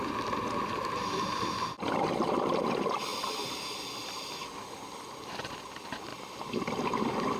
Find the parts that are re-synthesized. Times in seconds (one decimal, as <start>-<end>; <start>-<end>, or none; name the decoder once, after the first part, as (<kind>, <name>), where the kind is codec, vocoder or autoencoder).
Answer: 3.1-5.5 (vocoder, BigVGAN v2); 6.1-6.6